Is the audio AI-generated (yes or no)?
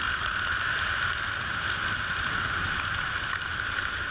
no